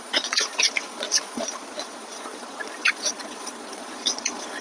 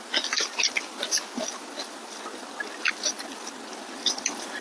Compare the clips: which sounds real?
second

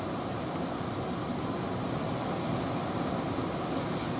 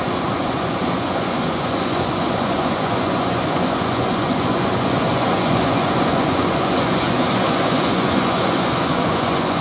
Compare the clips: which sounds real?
first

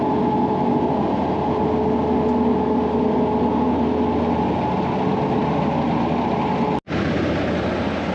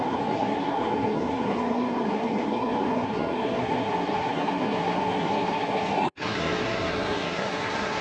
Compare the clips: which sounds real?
first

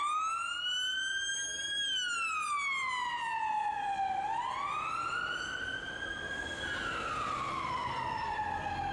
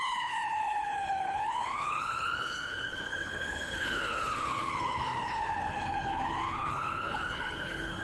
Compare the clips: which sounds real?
first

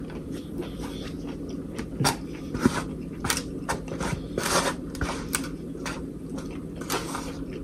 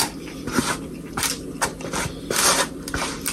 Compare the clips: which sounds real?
second